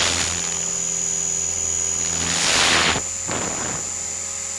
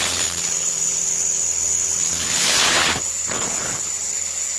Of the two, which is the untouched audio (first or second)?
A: first